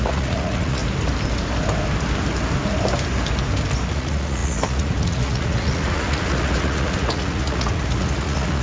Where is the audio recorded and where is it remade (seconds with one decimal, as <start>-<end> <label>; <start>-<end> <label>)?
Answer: 0.0-0.8 remade; 0.8-3.9 recorded; 3.9-8.6 remade